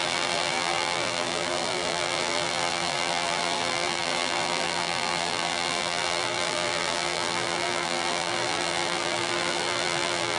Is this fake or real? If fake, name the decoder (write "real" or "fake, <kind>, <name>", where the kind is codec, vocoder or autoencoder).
fake, vocoder, BigVGAN v2